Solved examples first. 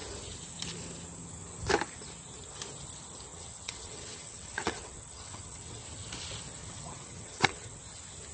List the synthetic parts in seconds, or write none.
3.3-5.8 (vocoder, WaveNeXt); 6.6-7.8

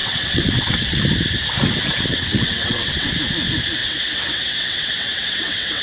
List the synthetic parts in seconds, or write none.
0.0-1.0 (vocoder, WaveNeXt); 2.1-3.1; 3.8-5.8

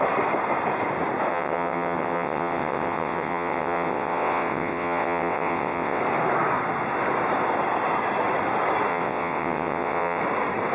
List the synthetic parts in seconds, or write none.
1.3-6.0 (vocoder, WaveNeXt); 8.9-10.2

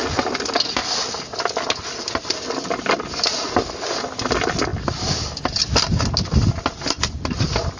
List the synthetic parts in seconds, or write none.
none

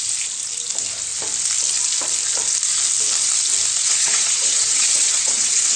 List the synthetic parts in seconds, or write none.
3.8-5.8 (vocoder, WaveNeXt)

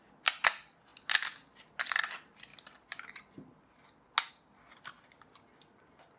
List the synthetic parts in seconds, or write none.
none